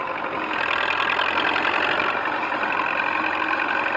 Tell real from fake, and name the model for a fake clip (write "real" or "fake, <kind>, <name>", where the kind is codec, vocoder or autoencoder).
real